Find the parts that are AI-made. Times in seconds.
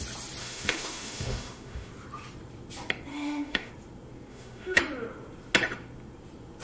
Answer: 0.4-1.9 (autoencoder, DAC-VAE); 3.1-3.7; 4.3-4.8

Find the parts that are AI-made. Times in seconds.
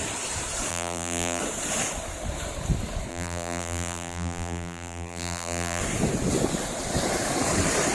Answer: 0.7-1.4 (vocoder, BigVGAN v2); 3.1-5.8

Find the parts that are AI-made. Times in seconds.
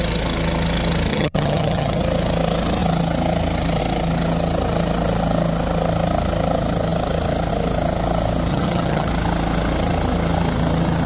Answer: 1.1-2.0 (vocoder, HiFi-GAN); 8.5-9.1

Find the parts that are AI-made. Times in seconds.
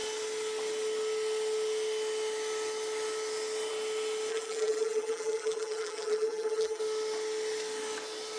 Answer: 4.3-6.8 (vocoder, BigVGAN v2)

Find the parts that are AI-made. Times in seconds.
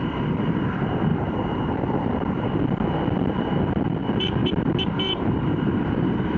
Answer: 1.1-2.6 (vocoder, BigVGAN v2); 4.4-6.4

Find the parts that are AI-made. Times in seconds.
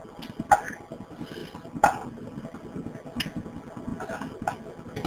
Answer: 1.4-2.4 (vocoder, BigVGAN v2)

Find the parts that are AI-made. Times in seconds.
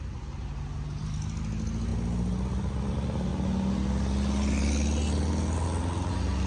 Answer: none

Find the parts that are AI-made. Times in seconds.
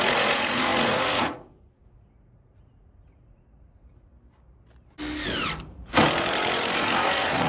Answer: 0.0-4.1 (vocoder, Vocos); 6.2-7.5